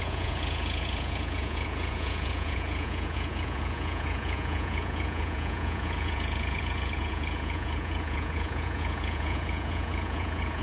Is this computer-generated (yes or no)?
yes